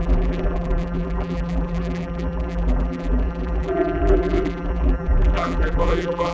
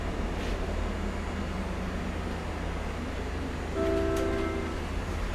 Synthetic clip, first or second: first